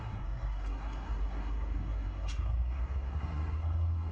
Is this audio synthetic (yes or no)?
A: yes